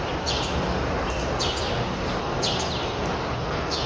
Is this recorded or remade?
recorded